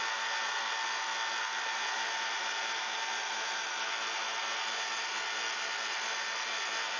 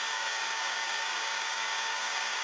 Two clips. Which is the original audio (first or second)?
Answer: first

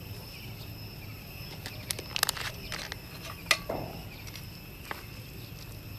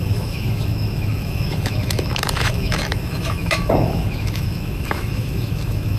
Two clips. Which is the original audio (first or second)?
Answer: first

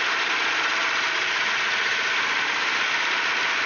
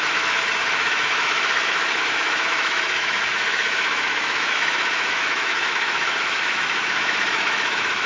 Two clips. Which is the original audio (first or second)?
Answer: first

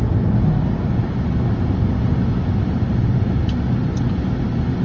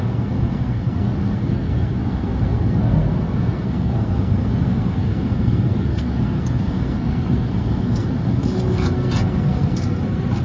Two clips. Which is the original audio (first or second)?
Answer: first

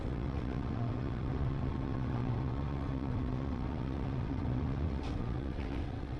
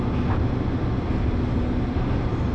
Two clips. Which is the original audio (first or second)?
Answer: second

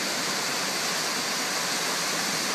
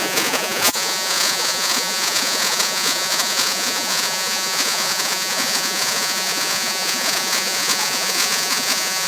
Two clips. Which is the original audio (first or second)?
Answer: first